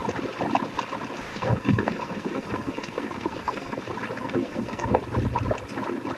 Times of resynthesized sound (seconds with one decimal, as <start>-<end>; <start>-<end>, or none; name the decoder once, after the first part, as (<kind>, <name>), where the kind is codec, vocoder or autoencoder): 1.3-3.8 (codec, SNAC); 4.2-5.0